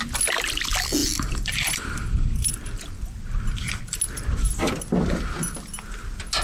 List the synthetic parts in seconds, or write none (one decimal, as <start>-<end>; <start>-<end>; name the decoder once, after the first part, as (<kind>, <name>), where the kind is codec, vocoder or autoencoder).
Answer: 1.0-3.8 (vocoder, BigVGAN v2)